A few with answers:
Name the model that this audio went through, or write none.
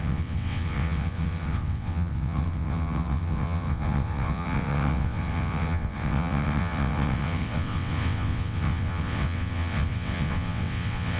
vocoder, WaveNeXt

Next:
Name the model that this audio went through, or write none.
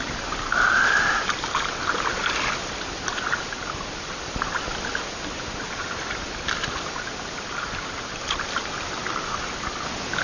none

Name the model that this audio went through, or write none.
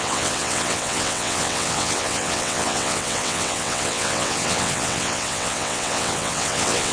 vocoder, WaveNeXt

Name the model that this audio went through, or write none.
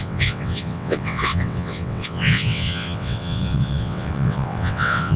vocoder, WaveNeXt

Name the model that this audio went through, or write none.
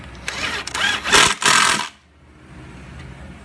none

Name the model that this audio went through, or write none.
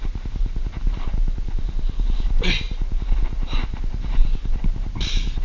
none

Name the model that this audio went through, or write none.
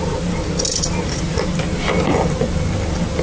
none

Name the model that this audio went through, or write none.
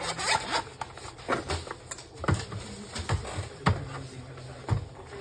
none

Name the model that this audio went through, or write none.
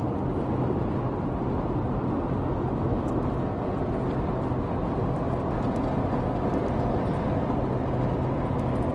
none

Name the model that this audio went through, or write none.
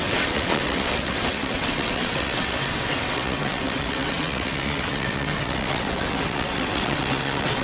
vocoder, WaveNeXt